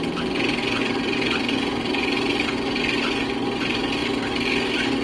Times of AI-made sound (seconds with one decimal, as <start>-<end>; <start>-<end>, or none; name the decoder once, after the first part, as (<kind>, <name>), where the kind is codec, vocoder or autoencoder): 0.6-2.8 (vocoder, BigVGAN v2); 4.0-4.5